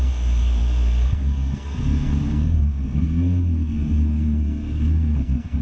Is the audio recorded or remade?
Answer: remade